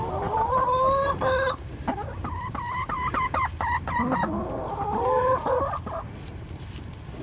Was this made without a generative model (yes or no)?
yes